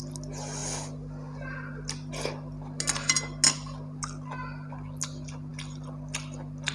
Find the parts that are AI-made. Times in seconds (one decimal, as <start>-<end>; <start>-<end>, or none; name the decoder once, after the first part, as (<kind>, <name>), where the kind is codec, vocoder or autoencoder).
none